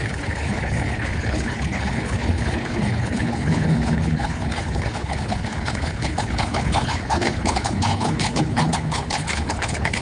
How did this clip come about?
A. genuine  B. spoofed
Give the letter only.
B